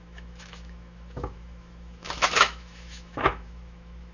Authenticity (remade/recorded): remade